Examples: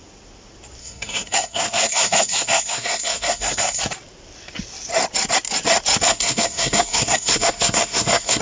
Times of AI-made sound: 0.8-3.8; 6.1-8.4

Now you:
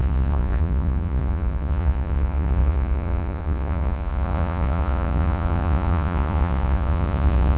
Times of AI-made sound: 0.0-7.6